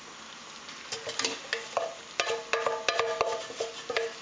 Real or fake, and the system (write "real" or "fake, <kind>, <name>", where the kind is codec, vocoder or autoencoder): real